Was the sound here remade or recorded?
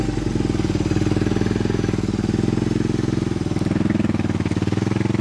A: recorded